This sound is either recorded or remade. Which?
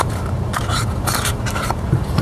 remade